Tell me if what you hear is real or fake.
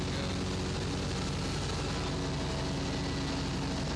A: real